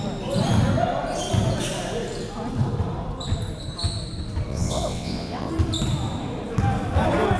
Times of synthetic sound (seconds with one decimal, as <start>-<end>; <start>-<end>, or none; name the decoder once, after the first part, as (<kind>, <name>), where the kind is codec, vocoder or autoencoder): 4.5-5.5 (vocoder, WaveNeXt)